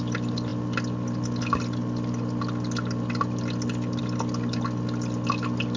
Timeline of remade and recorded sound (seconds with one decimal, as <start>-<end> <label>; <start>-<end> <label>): 0.0-5.8 recorded